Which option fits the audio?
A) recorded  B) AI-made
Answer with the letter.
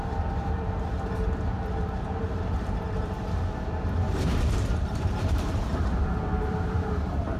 B